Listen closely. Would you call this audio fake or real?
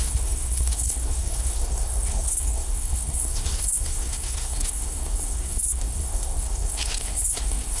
fake